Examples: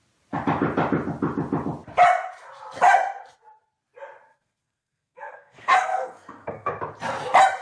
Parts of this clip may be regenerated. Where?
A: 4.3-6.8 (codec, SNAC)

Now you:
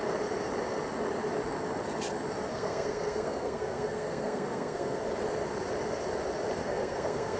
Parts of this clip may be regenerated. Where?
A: 2.5-5.0 (codec, SNAC); 6.6-7.4

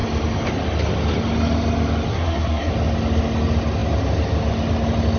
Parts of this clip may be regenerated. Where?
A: 2.1-2.7 (codec, SNAC)